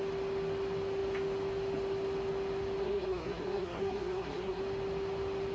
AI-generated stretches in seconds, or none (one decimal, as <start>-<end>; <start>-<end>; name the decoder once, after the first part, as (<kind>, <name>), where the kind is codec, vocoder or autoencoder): 2.8-4.6 (codec, SNAC)